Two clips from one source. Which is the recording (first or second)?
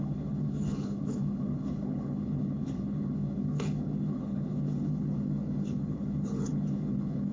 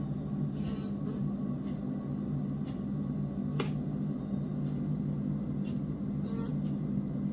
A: second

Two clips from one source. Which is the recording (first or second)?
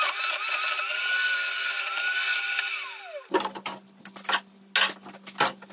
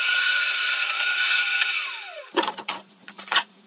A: first